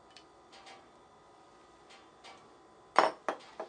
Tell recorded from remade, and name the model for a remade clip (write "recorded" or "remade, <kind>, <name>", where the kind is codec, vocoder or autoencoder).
recorded